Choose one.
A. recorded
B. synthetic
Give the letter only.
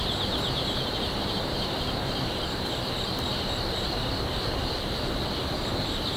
B